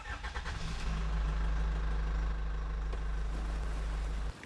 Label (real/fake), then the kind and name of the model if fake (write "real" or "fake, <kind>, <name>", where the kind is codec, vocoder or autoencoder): real